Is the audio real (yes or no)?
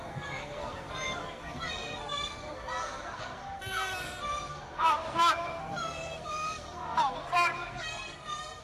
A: no